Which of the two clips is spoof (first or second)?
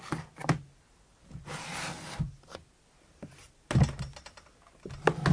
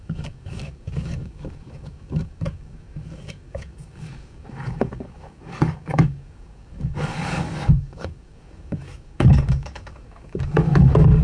second